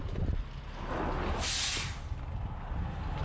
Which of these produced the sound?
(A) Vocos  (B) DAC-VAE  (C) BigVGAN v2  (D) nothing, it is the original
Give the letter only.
D